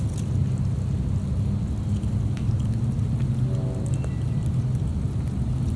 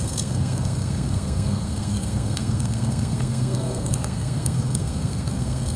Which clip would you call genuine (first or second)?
first